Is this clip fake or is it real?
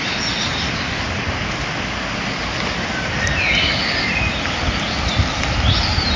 real